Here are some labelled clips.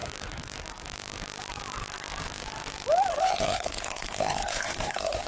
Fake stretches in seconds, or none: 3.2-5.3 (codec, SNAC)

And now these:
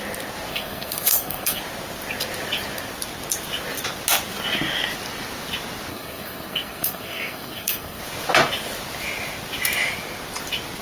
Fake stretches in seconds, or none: 0.5-1.6 (codec, SNAC); 5.9-8.0

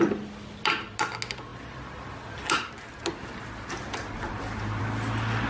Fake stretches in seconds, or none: none

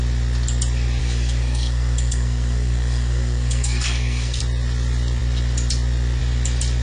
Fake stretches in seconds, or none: 1.0-4.4 (codec, SNAC)